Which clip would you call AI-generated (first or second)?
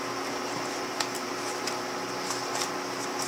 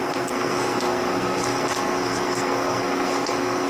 second